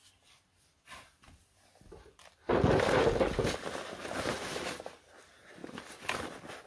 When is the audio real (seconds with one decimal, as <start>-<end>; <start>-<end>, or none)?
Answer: 0.0-6.7